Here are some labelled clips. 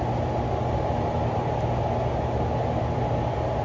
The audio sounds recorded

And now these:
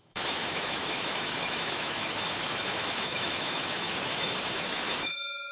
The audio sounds remade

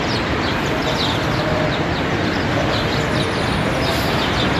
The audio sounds recorded